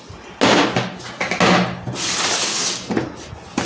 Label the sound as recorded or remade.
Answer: recorded